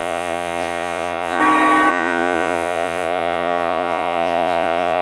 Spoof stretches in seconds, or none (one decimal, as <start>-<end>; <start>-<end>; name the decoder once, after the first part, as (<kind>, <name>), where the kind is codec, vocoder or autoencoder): 0.0-1.4 (vocoder, Vocos); 1.9-5.0

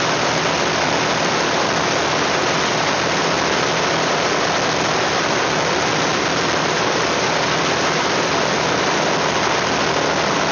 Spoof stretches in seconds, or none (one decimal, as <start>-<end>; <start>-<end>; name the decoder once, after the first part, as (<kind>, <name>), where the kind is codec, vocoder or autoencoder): none